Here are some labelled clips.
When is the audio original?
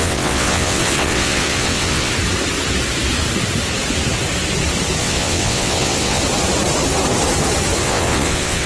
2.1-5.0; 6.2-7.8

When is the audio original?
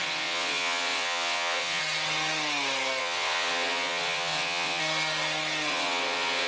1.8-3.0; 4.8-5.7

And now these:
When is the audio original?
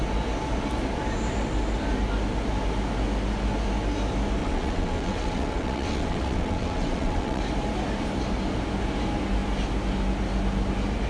0.0-4.4; 7.4-11.1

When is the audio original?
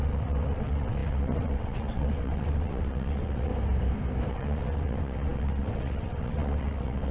3.5-4.3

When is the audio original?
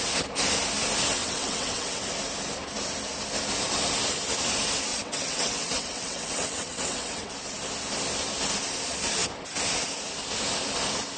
0.0-1.2; 2.0-4.9; 7.3-11.2